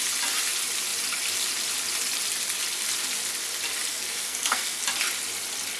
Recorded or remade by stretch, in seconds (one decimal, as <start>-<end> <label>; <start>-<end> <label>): 0.0-3.9 recorded; 3.9-4.8 remade; 4.8-5.8 recorded